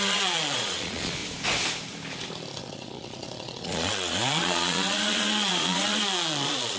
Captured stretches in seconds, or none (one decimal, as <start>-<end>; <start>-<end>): 1.2-2.6